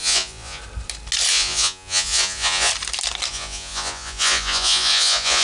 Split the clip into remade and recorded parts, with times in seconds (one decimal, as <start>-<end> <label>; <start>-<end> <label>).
0.0-0.6 remade; 0.6-1.3 recorded; 1.3-2.7 remade; 2.7-3.3 recorded; 3.3-5.4 remade